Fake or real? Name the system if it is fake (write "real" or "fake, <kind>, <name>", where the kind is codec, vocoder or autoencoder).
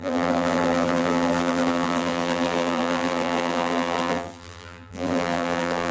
fake, vocoder, BigVGAN v2